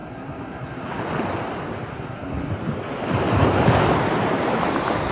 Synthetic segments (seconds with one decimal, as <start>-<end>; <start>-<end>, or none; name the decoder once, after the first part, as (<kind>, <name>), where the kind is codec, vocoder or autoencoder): 0.0-1.0 (codec, SNAC); 1.9-2.5